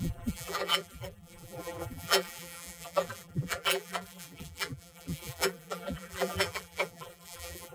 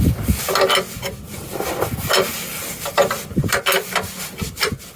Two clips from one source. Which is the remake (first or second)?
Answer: first